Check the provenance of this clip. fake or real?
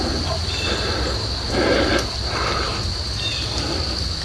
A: real